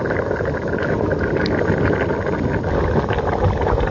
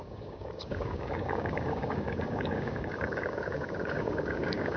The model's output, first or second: second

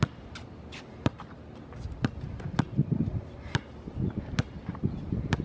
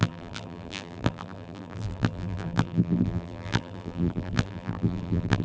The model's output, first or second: second